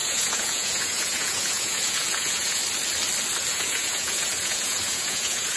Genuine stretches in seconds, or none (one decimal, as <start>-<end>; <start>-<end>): 2.6-3.5